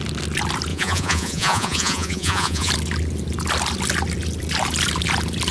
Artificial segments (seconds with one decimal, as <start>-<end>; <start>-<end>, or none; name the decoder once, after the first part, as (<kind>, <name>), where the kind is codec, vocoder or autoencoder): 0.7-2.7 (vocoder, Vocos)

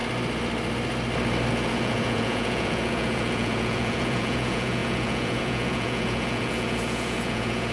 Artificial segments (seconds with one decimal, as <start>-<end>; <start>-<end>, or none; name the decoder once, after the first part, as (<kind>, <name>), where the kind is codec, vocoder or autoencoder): 1.5-7.7 (vocoder, Vocos)

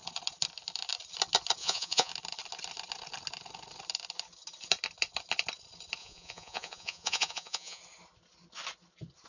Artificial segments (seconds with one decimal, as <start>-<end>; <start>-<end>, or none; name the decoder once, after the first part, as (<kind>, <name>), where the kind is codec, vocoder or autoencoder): 1.6-2.1 (vocoder, Vocos); 6.0-7.8